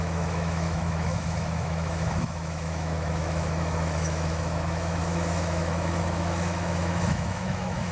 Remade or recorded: remade